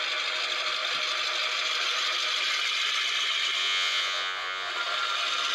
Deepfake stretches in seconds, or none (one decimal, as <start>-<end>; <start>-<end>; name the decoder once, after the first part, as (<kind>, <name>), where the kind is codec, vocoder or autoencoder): 3.6-4.7 (vocoder, Vocos)